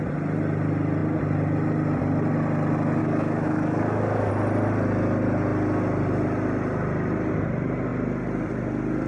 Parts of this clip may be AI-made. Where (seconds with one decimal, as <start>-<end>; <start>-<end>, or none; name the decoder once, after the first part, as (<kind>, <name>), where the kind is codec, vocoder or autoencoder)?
3.0-4.3 (codec, DAC)